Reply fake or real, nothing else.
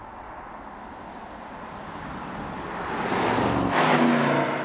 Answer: real